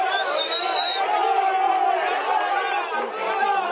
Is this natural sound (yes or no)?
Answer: no